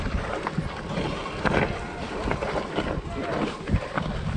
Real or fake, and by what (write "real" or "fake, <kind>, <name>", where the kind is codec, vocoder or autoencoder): real